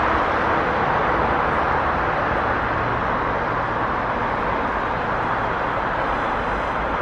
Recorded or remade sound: recorded